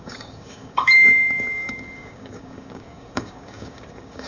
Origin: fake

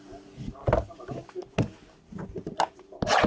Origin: real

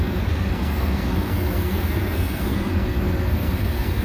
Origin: fake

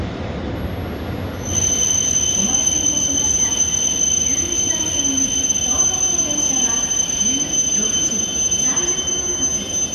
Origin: real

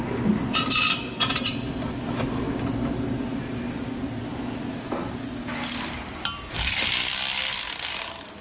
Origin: real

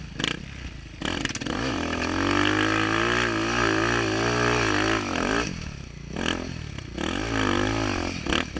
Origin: real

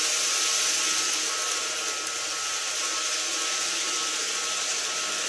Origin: real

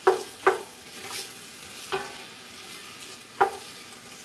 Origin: real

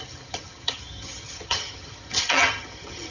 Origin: fake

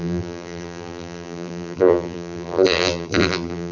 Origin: fake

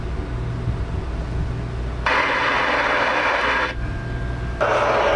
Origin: real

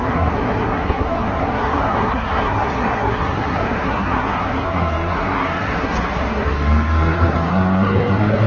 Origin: fake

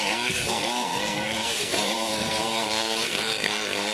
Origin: fake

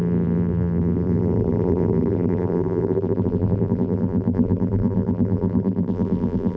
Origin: fake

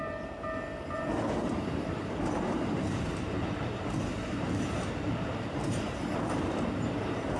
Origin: fake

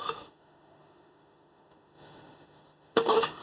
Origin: fake